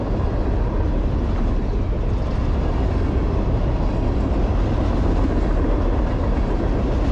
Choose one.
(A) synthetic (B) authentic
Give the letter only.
B